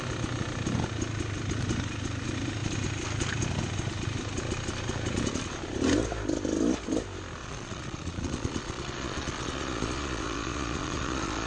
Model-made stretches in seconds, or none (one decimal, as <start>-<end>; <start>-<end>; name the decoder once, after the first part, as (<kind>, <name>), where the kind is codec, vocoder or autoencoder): 7.4-11.5 (vocoder, Vocos)